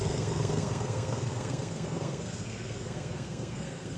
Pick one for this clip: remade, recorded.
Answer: remade